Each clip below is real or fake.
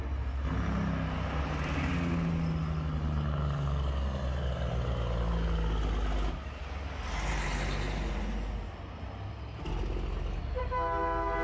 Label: real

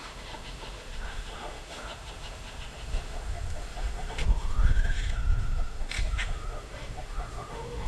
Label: fake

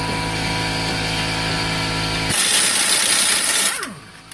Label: real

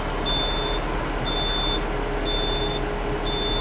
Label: real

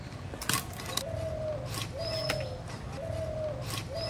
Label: real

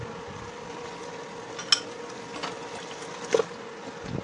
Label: real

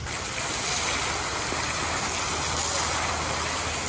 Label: real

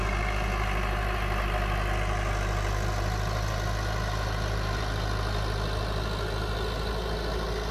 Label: real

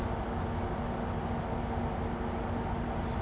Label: real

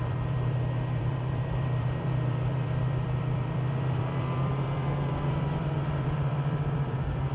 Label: fake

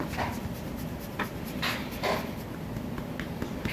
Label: real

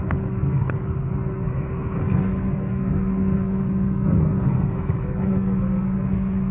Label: fake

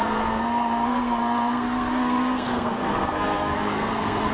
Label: fake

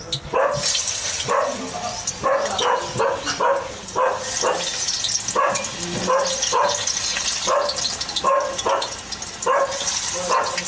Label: real